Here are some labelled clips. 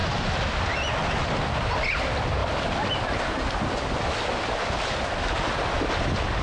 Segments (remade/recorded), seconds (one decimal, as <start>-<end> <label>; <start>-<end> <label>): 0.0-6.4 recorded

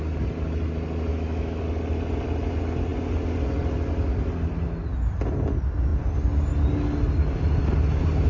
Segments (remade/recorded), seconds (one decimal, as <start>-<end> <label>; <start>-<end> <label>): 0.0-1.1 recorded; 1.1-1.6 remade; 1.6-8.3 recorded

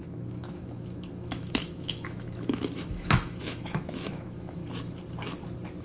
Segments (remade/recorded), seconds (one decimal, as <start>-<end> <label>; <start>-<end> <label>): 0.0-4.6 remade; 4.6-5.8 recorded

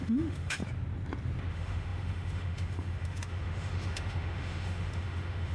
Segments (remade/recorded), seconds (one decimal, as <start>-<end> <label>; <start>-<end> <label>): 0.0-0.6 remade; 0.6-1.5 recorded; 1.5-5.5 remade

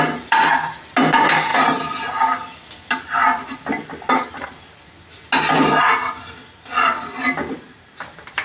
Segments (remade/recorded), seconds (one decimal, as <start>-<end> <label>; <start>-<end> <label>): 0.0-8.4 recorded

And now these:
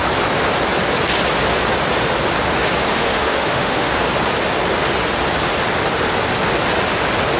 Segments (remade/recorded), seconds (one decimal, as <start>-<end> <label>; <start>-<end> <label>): 0.0-2.9 recorded; 2.9-3.9 remade; 3.9-7.4 recorded

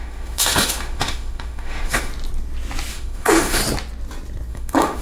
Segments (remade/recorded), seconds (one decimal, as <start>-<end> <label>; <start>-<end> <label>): 0.0-2.1 remade; 2.1-2.9 recorded; 2.9-3.6 remade; 3.6-4.5 recorded; 4.5-5.0 remade

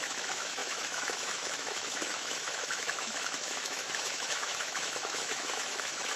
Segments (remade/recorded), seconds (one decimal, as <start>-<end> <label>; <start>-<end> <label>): 0.0-6.2 remade